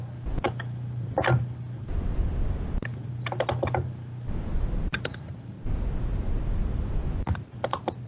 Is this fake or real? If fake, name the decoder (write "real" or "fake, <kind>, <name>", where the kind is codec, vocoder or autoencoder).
real